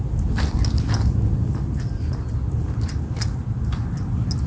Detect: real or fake real